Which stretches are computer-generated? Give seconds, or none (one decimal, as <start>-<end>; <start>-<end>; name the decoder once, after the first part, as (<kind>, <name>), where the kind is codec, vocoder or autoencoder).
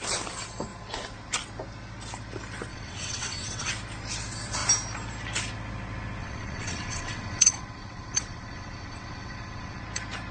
2.7-3.7 (vocoder, WaveNeXt); 6.2-9.8